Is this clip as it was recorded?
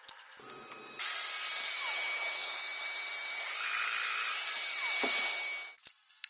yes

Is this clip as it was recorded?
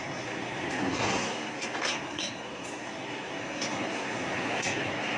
no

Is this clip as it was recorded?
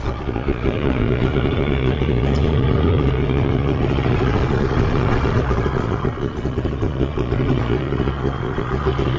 no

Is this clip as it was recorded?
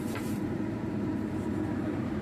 no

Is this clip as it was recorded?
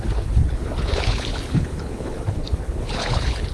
no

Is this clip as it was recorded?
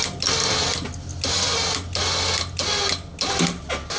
yes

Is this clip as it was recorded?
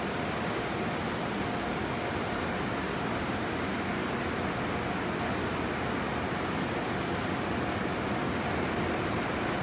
yes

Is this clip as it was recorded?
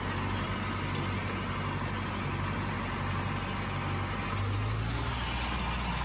yes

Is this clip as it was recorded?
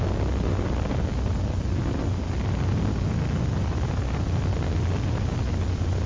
yes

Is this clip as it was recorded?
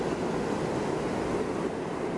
yes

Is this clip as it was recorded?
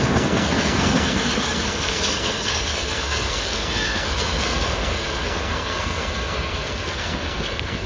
no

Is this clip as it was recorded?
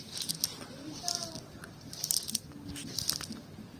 yes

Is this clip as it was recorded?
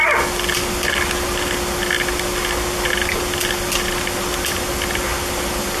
yes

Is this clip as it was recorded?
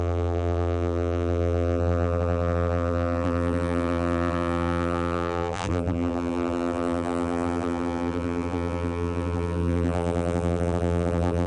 no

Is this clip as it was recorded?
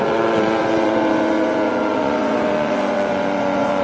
no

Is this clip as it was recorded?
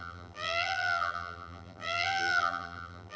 no